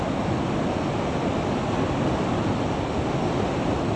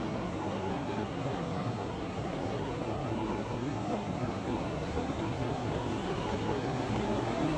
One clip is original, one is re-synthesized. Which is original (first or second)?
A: first